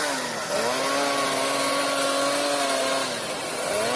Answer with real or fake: real